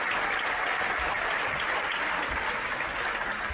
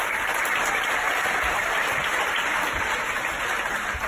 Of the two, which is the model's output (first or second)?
second